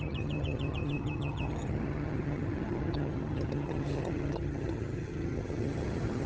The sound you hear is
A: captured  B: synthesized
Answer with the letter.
B